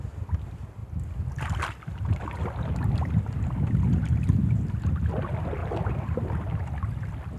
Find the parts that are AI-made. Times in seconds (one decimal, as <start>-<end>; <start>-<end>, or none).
none